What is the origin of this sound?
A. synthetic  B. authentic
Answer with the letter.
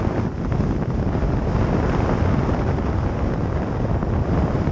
B